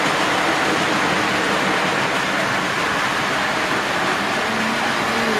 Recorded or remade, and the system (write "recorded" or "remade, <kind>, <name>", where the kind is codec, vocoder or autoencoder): recorded